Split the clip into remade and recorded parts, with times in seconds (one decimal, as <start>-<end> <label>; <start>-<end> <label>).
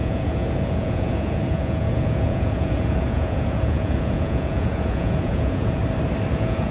0.0-5.8 remade; 5.8-6.3 recorded; 6.3-6.7 remade